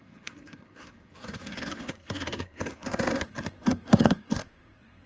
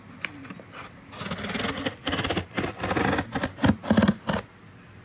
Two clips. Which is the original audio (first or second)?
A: second